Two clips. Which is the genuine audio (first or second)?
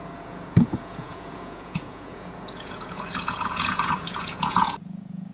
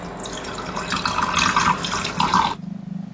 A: second